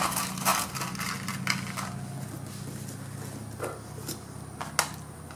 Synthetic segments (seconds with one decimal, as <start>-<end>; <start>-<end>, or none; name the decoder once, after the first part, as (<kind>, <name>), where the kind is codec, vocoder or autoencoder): none